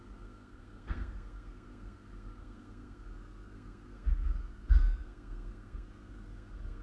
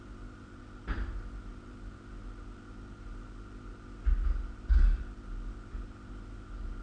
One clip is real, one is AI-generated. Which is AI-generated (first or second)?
first